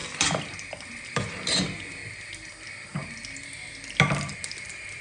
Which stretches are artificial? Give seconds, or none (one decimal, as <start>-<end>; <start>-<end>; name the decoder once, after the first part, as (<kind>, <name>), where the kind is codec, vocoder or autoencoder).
0.9-2.0 (vocoder, BigVGAN v2)